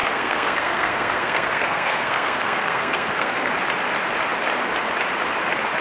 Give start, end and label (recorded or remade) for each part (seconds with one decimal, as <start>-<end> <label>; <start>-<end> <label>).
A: 0.0-3.5 remade; 3.5-5.8 recorded